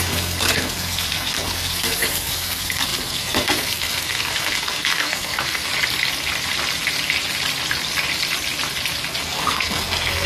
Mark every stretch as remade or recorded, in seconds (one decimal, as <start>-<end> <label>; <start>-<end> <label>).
0.0-5.7 remade; 5.7-9.2 recorded; 9.2-10.3 remade